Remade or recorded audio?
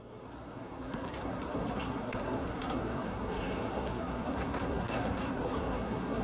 remade